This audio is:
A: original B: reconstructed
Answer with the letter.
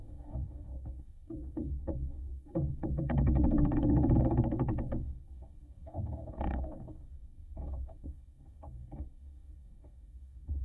B